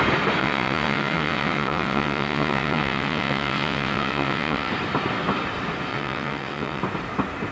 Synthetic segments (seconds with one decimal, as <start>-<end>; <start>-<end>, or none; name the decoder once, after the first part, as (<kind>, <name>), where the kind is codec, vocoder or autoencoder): 0.4-4.7 (vocoder, WaveNeXt); 5.9-6.8